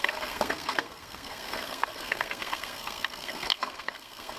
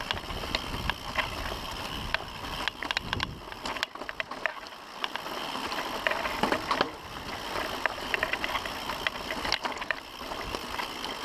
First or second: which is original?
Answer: second